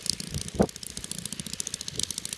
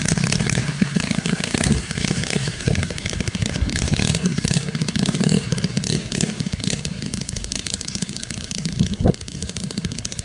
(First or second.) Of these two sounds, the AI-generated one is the second